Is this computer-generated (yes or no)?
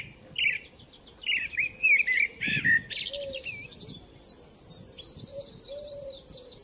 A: no